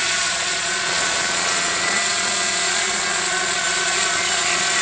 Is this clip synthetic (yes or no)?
yes